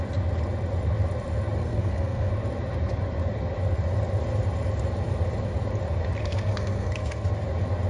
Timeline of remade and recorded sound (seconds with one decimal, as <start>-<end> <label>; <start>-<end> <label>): 0.0-1.6 recorded; 1.6-2.3 remade; 2.3-6.2 recorded; 6.2-7.3 remade; 7.3-7.9 recorded